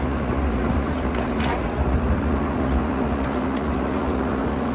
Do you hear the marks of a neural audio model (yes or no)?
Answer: yes